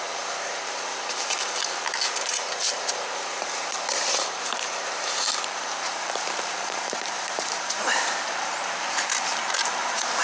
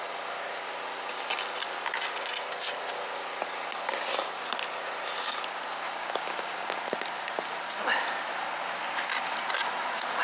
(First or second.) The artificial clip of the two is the first